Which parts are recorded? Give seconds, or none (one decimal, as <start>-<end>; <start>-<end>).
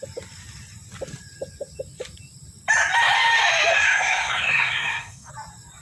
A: 0.0-3.7; 5.3-5.8